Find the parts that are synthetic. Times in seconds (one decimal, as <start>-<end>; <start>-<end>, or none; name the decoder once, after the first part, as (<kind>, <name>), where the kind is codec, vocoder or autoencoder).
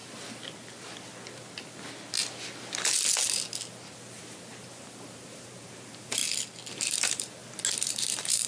4.2-6.2 (vocoder, BigVGAN v2); 6.7-7.4; 7.9-8.5